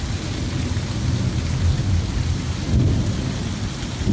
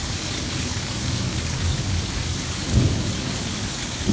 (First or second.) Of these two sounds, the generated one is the second